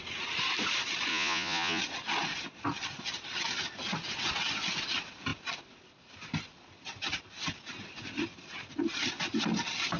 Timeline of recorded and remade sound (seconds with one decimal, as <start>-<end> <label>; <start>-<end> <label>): 0.0-1.1 recorded; 1.1-1.8 remade; 1.8-10.0 recorded